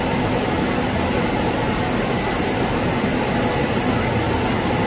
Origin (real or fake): real